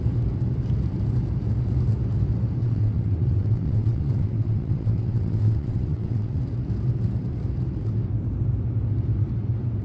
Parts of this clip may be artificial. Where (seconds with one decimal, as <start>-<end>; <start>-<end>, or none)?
2.6-6.4